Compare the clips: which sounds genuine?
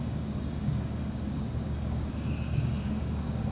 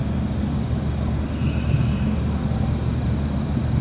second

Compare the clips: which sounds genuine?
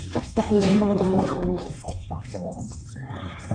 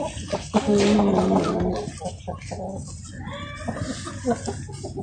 second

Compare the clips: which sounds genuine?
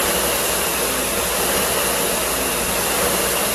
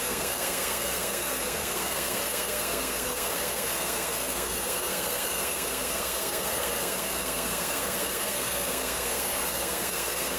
first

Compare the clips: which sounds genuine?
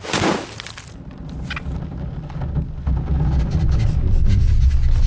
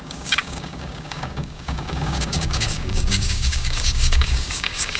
first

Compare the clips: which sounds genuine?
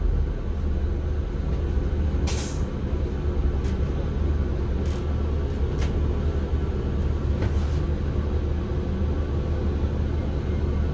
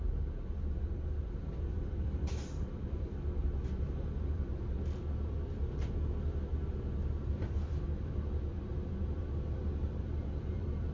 first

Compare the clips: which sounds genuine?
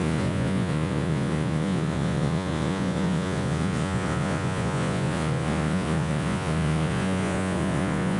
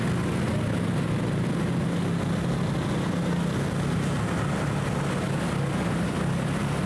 second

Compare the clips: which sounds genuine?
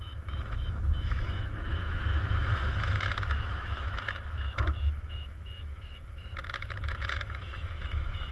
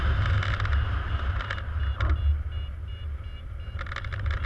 second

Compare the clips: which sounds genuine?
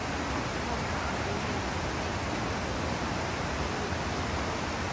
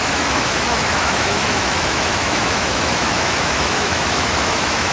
first